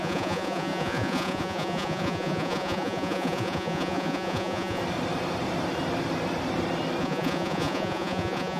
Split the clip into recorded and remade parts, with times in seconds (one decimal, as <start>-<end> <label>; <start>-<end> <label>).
0.0-4.8 remade; 4.8-7.0 recorded; 7.0-8.6 remade